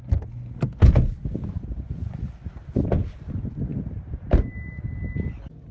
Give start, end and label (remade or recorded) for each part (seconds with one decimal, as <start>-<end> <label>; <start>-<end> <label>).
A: 0.0-5.7 recorded